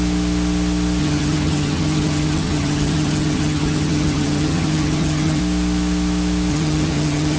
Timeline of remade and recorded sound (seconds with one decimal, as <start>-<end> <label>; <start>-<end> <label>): 0.0-1.0 recorded; 1.0-5.4 remade; 5.4-6.5 recorded; 6.5-7.4 remade